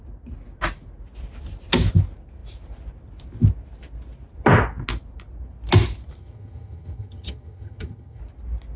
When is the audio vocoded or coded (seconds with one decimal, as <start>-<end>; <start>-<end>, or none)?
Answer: 6.2-8.2